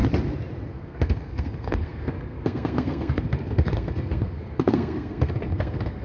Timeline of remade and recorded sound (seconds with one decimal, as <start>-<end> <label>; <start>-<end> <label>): 0.0-0.7 recorded; 0.7-6.0 remade